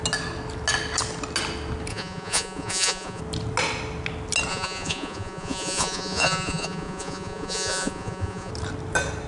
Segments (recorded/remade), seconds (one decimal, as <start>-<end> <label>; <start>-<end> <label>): 0.0-1.9 recorded; 1.9-3.2 remade; 3.2-4.5 recorded; 4.5-8.5 remade; 8.5-9.3 recorded